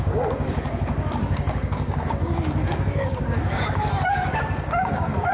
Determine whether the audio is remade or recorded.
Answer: remade